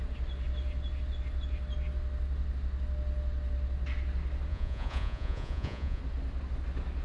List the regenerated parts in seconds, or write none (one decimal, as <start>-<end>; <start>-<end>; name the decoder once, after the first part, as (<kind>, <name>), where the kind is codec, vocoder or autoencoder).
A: 4.5-6.0 (vocoder, Vocos)